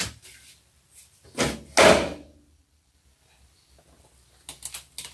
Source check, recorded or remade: recorded